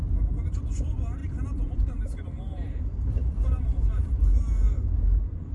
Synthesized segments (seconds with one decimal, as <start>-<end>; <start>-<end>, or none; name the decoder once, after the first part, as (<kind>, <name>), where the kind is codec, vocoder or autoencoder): 1.2-2.8 (vocoder, BigVGAN v2); 3.2-5.0